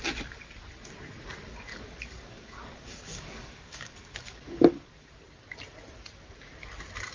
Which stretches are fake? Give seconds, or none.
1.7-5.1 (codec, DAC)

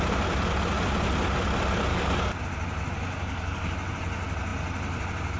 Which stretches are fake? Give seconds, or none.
1.9-2.4 (codec, DAC); 3.2-3.7

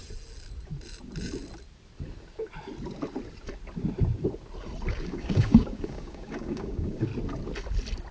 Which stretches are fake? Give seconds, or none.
4.9-7.1 (codec, DAC)

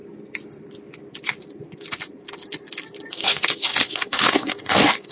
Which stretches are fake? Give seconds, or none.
3.1-5.1 (codec, DAC)

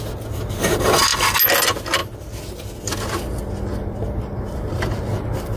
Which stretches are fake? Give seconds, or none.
none